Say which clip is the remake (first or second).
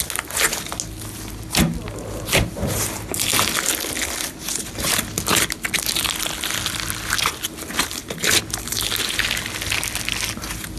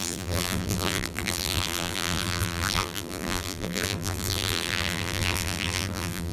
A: second